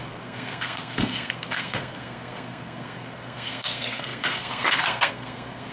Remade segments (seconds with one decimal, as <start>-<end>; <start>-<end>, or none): 0.0-5.7